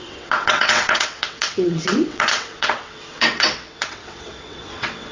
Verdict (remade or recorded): remade